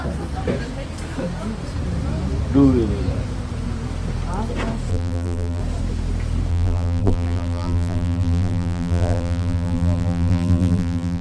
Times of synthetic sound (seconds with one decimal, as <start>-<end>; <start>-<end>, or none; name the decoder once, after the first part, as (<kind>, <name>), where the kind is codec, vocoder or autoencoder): 4.9-5.6 (vocoder, BigVGAN v2); 6.5-11.2